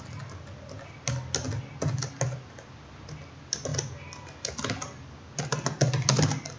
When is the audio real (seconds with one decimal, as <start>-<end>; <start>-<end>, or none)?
0.0-6.6